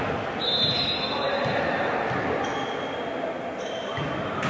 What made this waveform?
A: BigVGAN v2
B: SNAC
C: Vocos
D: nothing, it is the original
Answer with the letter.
D